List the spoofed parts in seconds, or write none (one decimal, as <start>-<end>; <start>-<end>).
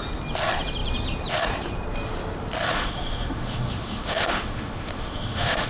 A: 2.7-5.7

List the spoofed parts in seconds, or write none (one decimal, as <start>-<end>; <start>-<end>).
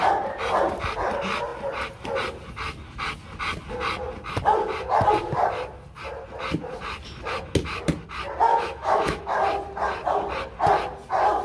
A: 8.5-9.2